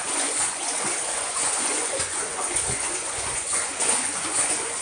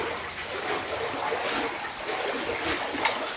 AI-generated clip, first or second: first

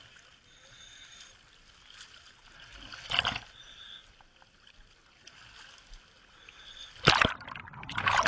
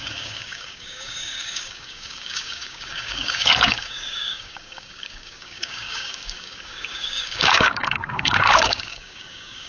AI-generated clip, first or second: second